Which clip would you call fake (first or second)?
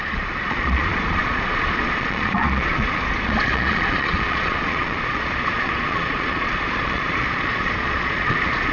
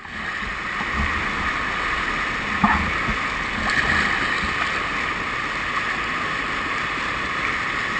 first